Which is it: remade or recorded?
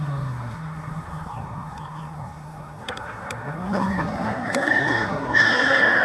remade